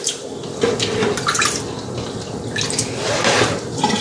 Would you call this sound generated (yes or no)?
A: no